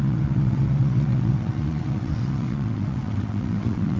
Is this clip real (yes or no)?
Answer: no